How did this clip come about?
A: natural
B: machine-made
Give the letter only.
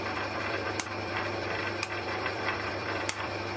B